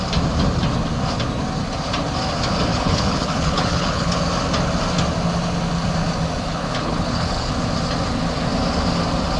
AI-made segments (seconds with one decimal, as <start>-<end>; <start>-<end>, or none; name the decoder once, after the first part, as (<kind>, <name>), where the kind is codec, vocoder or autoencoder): 2.7-4.1 (codec, HILCodec); 6.4-7.5